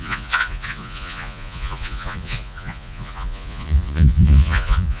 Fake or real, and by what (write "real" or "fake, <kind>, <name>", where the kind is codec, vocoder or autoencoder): fake, vocoder, Vocos